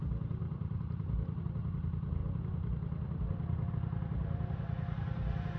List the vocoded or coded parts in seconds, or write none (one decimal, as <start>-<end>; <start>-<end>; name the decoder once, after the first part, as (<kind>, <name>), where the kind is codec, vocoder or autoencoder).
0.4-1.4 (vocoder, BigVGAN v2); 2.2-3.7